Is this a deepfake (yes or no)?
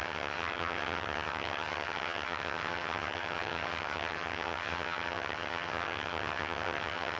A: yes